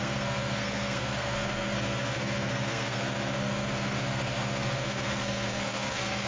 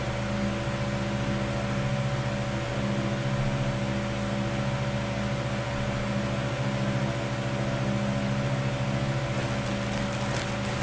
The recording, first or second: second